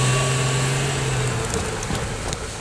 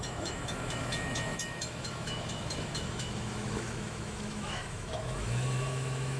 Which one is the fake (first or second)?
second